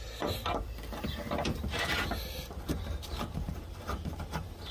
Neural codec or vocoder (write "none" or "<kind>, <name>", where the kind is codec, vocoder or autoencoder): none